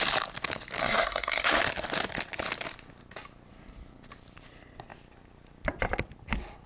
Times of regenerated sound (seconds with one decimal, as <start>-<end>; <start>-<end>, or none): 0.8-1.6